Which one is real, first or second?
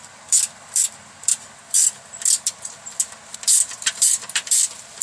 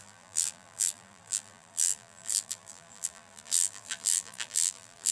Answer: first